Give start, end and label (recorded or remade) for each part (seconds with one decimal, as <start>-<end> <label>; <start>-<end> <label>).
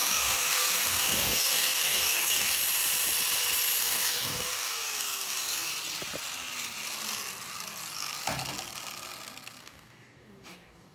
0.0-2.6 remade; 2.6-3.8 recorded; 3.8-5.7 remade; 5.7-9.6 recorded; 9.6-10.9 remade